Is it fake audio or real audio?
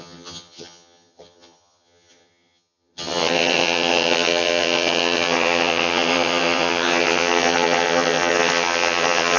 fake